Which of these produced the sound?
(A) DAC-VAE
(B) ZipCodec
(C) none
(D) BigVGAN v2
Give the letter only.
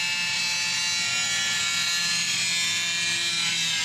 C